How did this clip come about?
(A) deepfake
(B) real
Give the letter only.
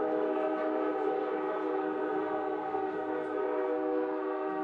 A